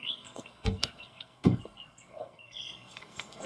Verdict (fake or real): fake